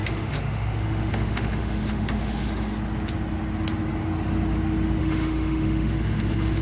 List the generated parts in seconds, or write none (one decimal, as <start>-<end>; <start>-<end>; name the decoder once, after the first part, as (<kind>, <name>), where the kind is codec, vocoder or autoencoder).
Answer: 0.0-2.7 (autoencoder, DAC-VAE); 5.0-6.6